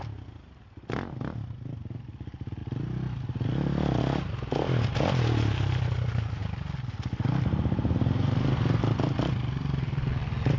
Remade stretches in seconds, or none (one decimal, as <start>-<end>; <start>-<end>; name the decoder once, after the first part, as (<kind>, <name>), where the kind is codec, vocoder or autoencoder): none